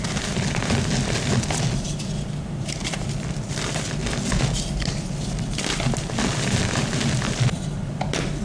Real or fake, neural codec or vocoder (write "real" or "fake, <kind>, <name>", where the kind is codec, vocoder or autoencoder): fake, vocoder, BigVGAN v2